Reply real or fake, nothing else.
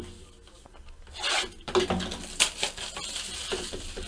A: real